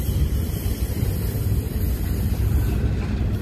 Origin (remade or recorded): recorded